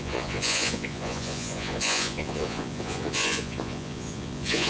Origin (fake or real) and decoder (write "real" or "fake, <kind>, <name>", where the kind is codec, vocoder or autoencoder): fake, vocoder, Vocos